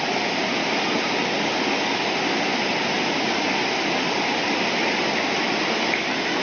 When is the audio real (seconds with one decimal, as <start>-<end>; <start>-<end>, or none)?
0.0-2.5